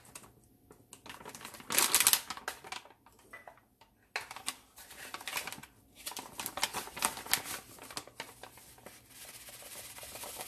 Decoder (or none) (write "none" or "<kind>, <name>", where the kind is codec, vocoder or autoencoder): none